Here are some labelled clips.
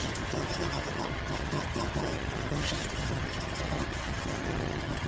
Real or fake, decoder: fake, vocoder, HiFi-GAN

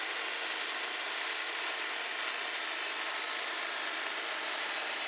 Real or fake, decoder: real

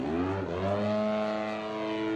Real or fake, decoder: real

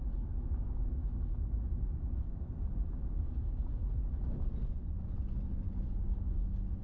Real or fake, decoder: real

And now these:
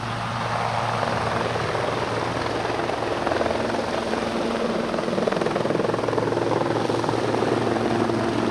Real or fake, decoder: real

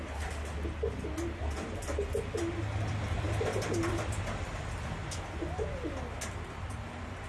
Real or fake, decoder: real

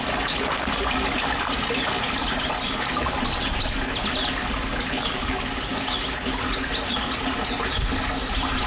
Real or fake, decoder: real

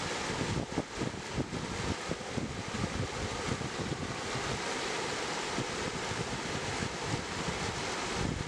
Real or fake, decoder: real